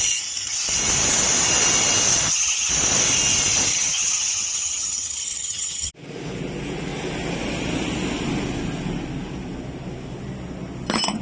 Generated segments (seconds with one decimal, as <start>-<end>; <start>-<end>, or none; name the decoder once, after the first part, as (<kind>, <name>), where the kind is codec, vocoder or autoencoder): 2.1-2.7 (vocoder, HiFi-GAN); 3.7-5.9